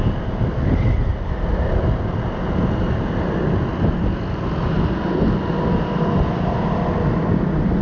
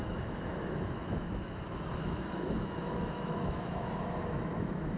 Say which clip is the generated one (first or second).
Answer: second